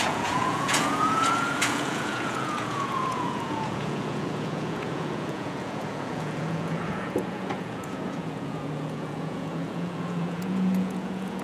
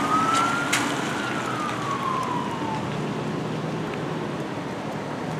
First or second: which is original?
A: second